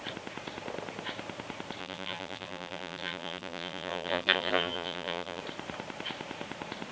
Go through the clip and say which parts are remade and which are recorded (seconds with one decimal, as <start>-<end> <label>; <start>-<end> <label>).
0.0-1.8 recorded; 1.8-5.4 remade; 5.4-6.9 recorded